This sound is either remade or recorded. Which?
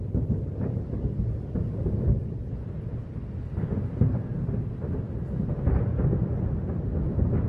recorded